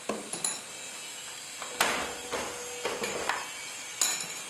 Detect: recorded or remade recorded